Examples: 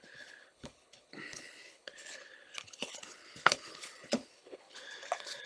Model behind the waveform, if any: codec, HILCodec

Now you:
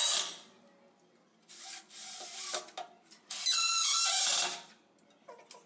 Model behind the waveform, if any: none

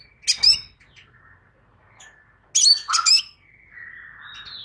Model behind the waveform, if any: none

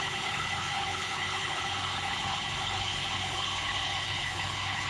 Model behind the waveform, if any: codec, HILCodec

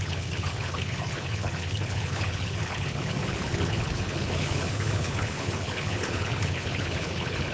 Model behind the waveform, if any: codec, HILCodec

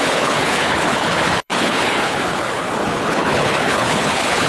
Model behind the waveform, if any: codec, HILCodec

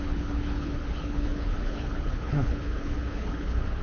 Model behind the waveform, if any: codec, HILCodec